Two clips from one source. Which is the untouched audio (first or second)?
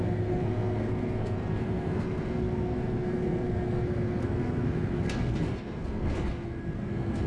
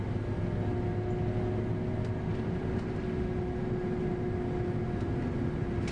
second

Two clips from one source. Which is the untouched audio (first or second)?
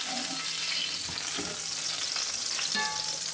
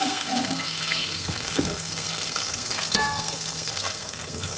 first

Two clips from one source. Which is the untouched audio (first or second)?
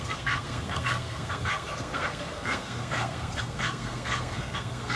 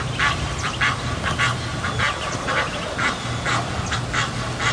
second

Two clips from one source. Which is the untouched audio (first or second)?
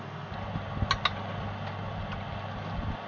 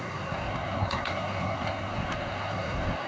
first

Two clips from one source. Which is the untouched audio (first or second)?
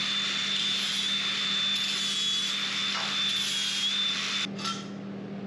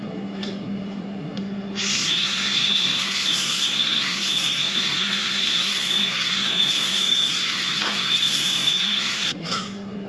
first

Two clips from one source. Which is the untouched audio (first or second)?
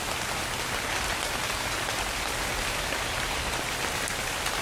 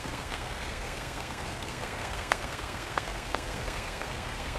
first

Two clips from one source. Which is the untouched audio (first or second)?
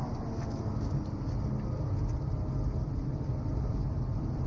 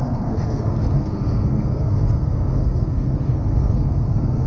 first